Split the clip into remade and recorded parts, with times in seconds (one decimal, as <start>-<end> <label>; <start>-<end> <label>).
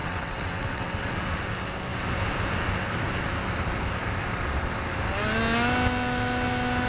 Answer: 0.0-1.1 remade; 1.1-6.9 recorded